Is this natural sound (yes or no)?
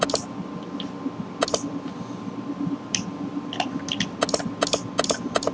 yes